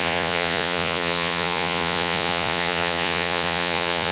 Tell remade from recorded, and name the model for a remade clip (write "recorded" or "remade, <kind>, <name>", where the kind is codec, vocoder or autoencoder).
remade, vocoder, Vocos